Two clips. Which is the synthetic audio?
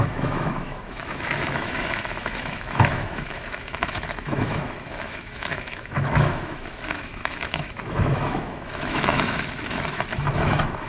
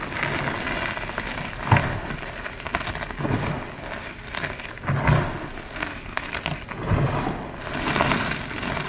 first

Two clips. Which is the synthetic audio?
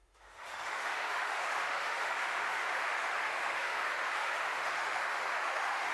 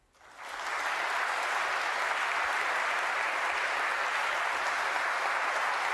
first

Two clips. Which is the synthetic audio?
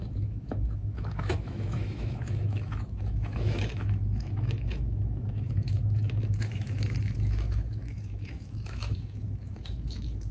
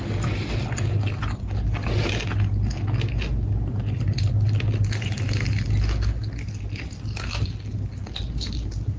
first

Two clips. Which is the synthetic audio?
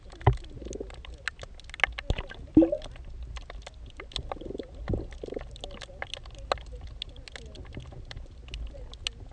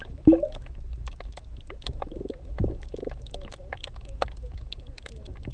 second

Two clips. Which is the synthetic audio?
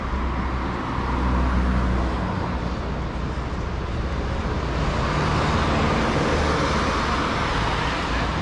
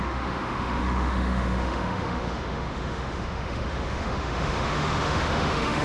second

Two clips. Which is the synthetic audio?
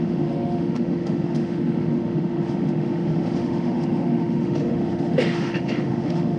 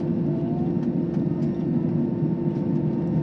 first